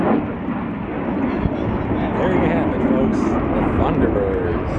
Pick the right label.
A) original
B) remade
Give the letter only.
A